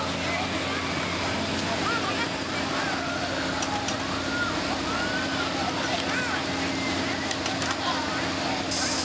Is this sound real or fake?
real